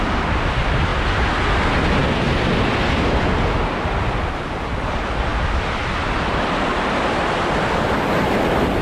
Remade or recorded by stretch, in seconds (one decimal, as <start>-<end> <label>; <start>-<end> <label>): 0.0-8.8 recorded